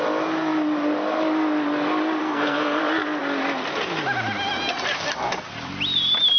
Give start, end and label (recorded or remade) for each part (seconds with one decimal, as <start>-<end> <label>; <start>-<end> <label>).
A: 0.0-2.2 recorded; 2.2-2.8 remade; 2.8-6.4 recorded